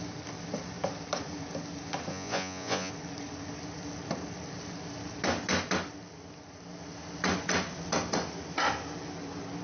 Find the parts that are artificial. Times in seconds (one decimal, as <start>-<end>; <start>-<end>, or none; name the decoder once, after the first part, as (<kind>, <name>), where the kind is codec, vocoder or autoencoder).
2.1-2.9 (vocoder, Vocos)